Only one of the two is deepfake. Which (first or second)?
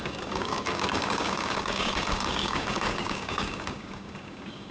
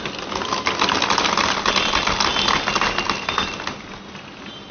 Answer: first